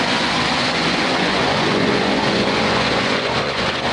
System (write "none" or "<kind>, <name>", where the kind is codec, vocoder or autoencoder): vocoder, Vocos